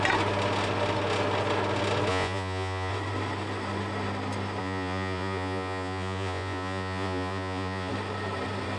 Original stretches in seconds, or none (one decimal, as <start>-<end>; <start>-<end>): 0.0-2.1; 2.9-4.6; 7.9-8.8